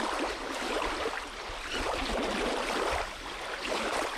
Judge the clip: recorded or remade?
remade